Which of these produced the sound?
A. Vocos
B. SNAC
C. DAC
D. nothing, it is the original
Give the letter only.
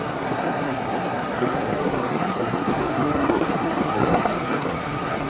B